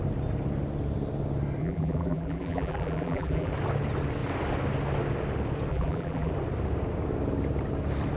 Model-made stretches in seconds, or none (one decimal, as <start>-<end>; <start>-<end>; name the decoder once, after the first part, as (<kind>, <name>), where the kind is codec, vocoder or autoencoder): 1.6-3.5 (vocoder, BigVGAN v2); 5.7-6.3